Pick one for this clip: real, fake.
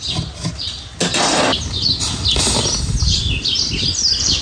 real